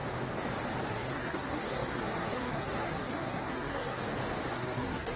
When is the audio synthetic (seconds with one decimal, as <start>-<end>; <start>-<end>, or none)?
0.9-4.0; 4.5-5.2